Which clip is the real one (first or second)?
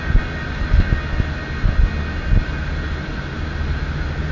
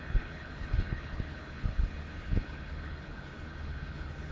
first